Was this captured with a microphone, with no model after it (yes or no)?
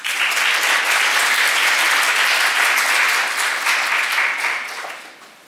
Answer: yes